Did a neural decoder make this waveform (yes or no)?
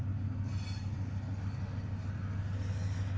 no